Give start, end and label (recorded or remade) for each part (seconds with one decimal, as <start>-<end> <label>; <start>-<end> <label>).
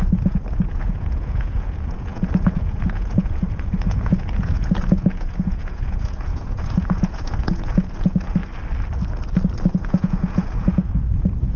0.0-8.4 remade; 8.4-9.7 recorded; 9.7-11.6 remade